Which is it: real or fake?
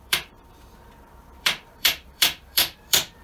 fake